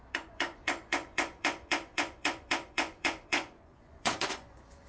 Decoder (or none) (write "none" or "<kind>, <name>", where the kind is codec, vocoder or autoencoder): vocoder, Vocos